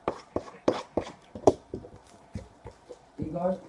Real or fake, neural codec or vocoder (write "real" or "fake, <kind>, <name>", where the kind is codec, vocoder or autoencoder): fake, vocoder, BigVGAN v2